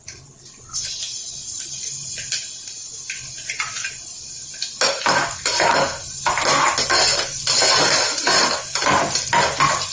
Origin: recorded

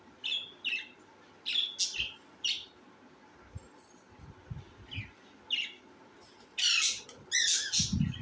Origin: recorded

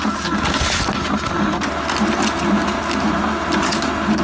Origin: recorded